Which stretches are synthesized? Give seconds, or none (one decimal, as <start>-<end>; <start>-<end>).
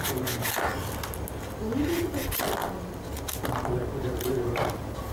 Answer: none